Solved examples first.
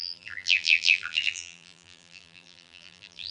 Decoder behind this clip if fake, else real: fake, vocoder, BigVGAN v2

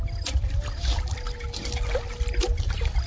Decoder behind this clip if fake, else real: real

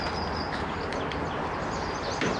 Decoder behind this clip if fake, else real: real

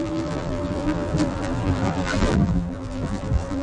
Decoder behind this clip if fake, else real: fake, vocoder, BigVGAN v2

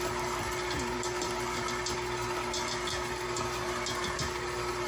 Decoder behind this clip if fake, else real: real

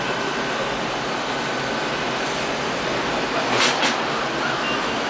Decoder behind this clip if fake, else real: real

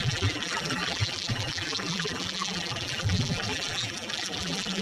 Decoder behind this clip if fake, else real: fake, vocoder, BigVGAN v2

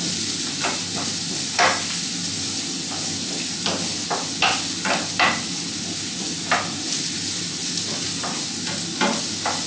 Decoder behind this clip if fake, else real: real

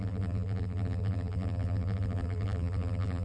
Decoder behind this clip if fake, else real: fake, vocoder, BigVGAN v2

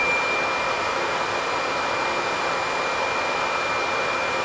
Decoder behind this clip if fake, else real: real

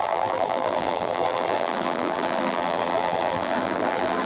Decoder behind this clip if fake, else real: fake, vocoder, BigVGAN v2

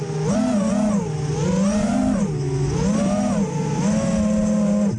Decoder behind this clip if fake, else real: real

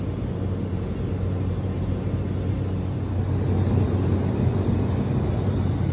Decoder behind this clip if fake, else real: real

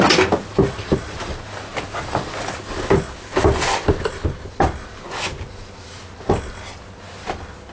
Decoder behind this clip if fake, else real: real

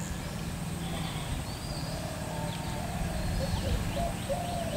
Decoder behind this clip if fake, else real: real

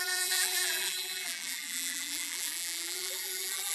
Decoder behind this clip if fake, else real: fake, vocoder, BigVGAN v2